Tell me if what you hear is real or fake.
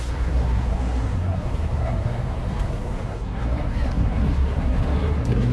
fake